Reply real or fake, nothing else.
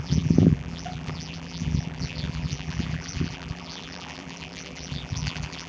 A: fake